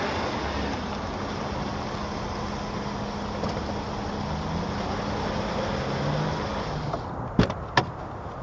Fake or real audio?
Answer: real